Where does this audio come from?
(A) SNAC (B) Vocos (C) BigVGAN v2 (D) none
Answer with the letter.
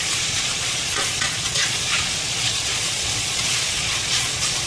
B